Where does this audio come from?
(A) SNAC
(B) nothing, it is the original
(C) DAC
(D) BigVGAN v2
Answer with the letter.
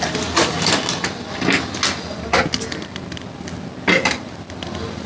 B